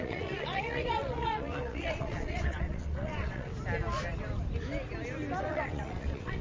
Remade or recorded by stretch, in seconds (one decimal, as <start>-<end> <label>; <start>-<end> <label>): 0.0-3.5 remade; 3.5-5.4 recorded; 5.4-6.4 remade